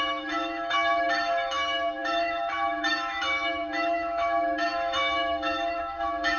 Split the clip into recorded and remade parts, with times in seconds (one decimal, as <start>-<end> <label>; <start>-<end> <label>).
0.0-6.4 remade